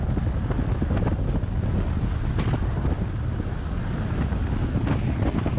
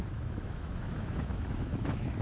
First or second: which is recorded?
first